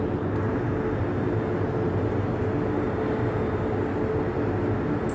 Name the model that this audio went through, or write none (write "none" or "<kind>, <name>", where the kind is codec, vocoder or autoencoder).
none